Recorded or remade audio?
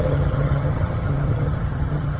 remade